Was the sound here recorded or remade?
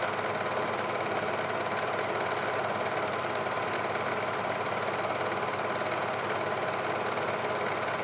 recorded